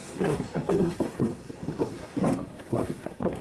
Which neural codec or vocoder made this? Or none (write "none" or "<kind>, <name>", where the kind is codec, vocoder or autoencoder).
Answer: codec, SNAC